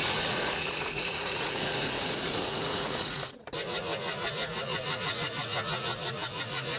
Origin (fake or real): fake